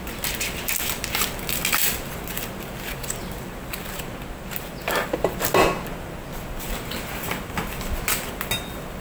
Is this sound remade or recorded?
recorded